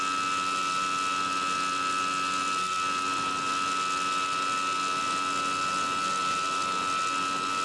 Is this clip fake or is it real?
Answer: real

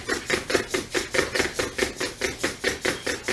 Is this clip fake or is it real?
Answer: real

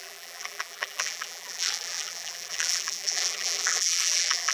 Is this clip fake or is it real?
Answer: fake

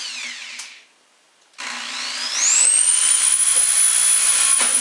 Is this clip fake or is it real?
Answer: real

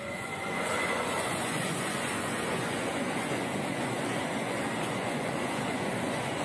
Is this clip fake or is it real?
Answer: fake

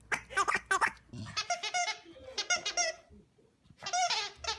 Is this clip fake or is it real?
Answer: real